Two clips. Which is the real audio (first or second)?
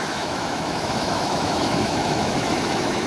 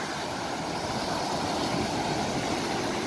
second